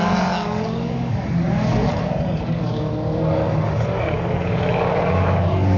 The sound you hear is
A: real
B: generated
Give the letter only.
B